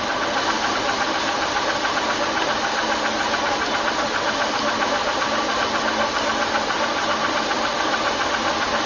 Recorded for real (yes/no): yes